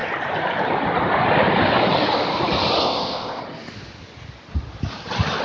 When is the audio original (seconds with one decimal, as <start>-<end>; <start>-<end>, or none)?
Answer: 0.0-2.8; 3.4-5.4